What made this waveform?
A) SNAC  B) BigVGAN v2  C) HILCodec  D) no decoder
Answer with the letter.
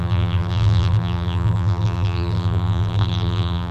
B